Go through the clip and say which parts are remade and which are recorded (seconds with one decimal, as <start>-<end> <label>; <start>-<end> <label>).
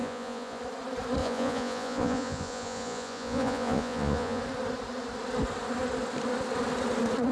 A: 0.0-0.6 remade; 0.6-1.2 recorded; 1.2-4.4 remade; 4.4-7.3 recorded